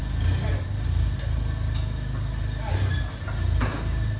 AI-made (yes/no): no